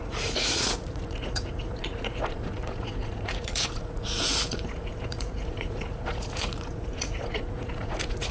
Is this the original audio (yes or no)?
no